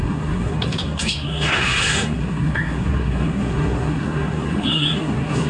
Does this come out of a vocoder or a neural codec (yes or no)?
yes